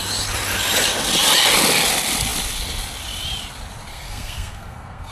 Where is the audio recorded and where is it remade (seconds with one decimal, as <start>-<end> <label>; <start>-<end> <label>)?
0.0-3.9 recorded; 3.9-5.1 remade